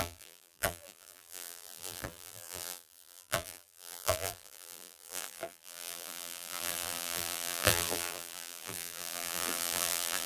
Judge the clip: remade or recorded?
remade